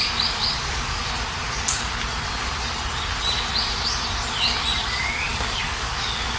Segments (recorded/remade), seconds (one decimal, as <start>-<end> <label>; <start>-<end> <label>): 0.0-1.0 remade; 1.0-4.8 recorded; 4.8-6.4 remade